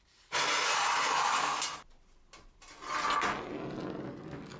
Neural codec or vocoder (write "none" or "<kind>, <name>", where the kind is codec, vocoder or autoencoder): none